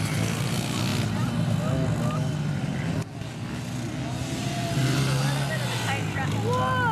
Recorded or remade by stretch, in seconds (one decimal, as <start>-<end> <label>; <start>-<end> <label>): 0.0-6.9 recorded